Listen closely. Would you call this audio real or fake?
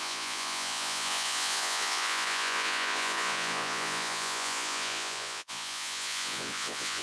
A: fake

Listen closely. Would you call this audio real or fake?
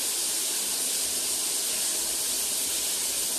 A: real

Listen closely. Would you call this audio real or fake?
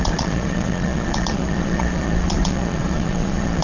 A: fake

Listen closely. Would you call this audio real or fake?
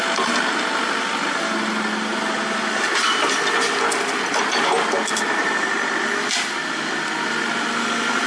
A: real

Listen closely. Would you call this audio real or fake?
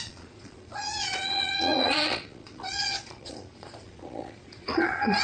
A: fake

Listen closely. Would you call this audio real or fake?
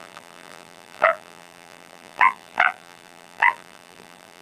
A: fake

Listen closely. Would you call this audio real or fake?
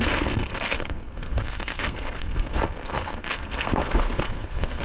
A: fake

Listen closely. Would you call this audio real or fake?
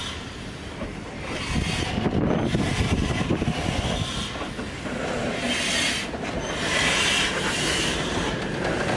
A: real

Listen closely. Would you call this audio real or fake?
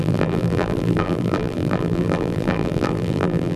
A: fake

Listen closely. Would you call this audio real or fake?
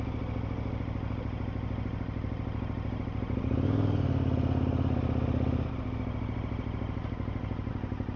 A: real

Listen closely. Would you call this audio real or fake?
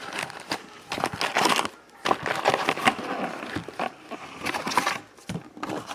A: real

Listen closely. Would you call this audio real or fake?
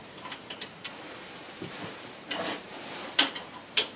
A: fake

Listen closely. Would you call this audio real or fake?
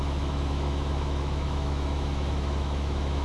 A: fake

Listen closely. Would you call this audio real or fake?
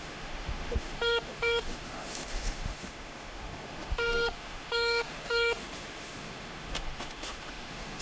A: fake